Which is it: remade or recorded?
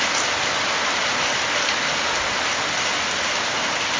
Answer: recorded